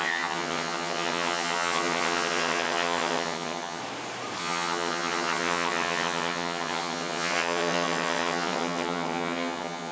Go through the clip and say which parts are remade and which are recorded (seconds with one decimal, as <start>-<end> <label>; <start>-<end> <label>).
0.0-3.8 remade; 3.8-4.4 recorded; 4.4-9.9 remade